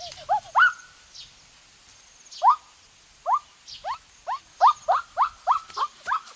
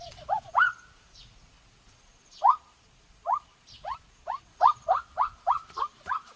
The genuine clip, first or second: first